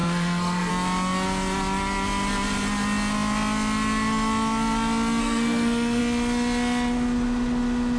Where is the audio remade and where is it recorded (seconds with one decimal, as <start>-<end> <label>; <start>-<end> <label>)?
0.0-0.7 remade; 0.7-5.2 recorded; 5.2-6.0 remade; 6.0-8.0 recorded